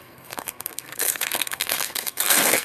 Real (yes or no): no